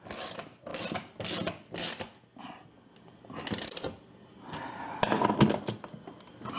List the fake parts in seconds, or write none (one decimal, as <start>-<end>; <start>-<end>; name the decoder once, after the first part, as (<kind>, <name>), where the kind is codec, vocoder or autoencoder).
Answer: none